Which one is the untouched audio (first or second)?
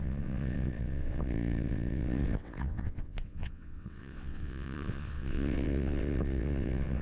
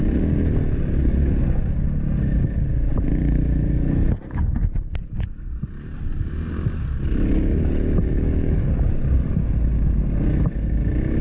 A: second